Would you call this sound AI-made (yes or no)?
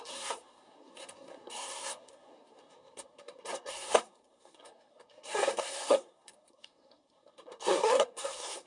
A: yes